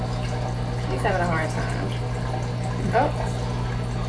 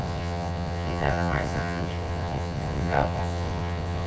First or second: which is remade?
second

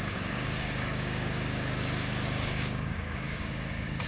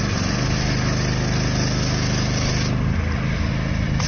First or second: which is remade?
first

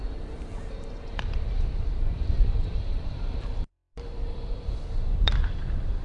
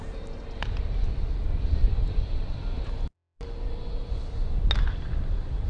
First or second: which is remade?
first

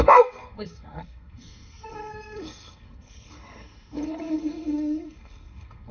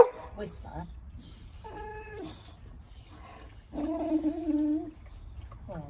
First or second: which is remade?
first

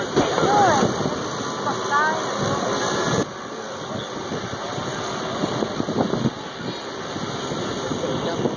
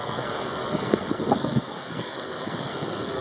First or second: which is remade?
second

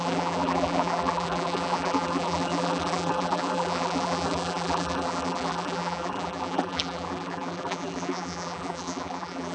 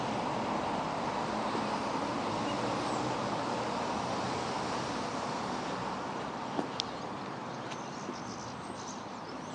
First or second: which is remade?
first